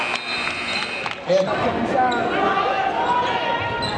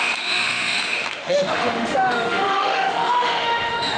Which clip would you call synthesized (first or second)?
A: second